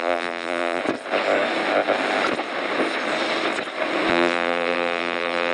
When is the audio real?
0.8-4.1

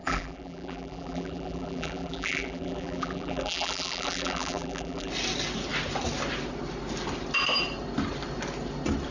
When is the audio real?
5.1-9.1

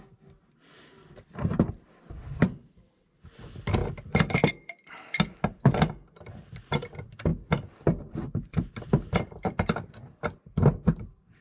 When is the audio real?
0.0-11.4

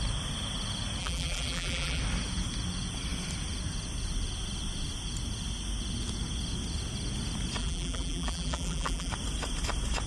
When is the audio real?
0.0-1.0; 2.0-7.6; 9.1-10.1

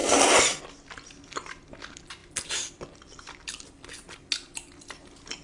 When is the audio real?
0.6-2.2; 4.3-5.4

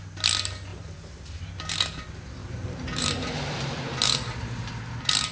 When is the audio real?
0.0-0.7; 1.3-2.4; 4.8-5.3

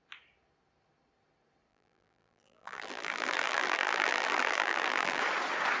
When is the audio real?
0.0-1.7; 5.2-5.8